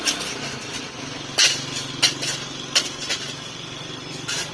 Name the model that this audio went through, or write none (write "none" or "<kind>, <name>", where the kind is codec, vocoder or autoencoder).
none